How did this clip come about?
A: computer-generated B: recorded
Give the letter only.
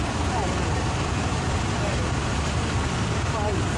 A